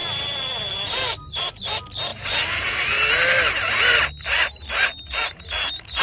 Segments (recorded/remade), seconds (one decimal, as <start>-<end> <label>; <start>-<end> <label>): 0.0-6.0 recorded